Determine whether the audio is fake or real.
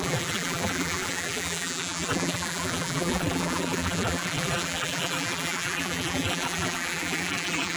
fake